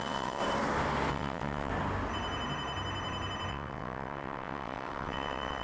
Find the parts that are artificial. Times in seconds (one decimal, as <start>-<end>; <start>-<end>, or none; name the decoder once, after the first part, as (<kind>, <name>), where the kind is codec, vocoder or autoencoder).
0.0-0.4 (vocoder, WaveNeXt); 1.1-1.7; 3.5-5.6